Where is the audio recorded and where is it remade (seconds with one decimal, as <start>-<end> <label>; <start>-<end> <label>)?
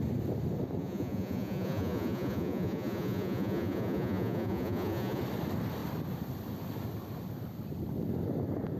0.0-0.8 recorded; 0.8-5.2 remade; 5.2-8.8 recorded